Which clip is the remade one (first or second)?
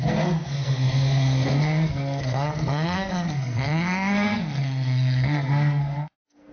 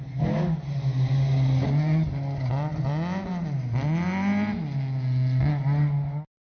first